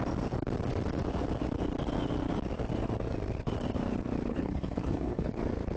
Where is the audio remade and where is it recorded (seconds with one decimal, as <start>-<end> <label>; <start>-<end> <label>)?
0.0-4.3 recorded; 4.3-5.3 remade; 5.3-5.8 recorded